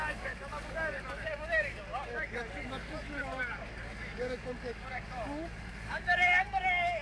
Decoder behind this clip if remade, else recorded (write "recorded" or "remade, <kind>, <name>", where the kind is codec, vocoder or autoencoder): remade, codec, DAC